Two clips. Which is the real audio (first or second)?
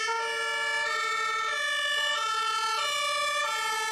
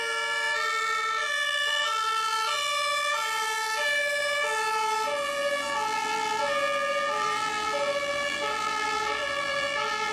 first